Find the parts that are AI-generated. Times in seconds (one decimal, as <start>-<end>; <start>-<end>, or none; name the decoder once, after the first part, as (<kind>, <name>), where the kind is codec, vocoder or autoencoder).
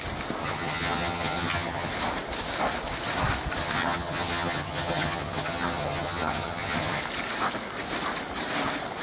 0.4-1.9 (vocoder, HiFi-GAN); 3.6-7.0